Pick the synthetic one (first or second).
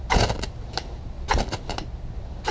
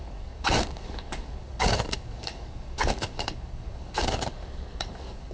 second